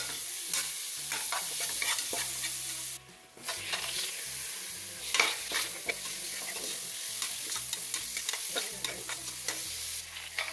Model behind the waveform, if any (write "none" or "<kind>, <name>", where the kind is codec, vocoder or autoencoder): none